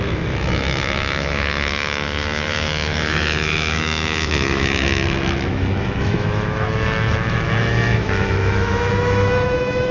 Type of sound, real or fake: fake